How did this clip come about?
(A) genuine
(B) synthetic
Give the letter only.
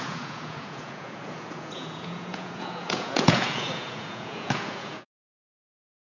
B